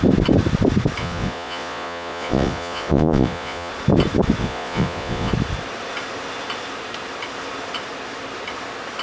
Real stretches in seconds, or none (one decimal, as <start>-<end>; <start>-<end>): 0.0-1.0; 3.7-4.4; 5.3-9.0